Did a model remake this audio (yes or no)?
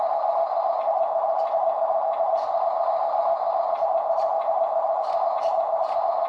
no